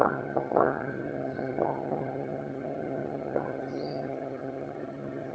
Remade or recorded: remade